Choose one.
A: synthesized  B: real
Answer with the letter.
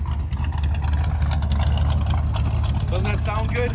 B